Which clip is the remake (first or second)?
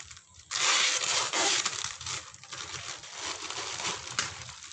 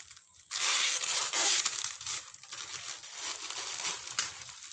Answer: first